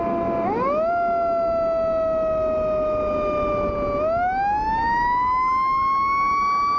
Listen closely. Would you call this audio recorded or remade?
recorded